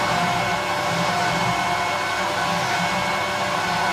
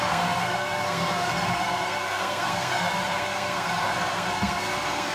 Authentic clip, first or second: first